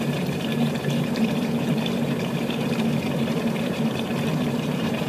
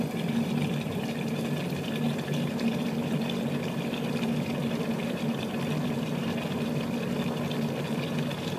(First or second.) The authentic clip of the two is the second